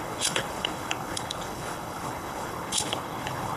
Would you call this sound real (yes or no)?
no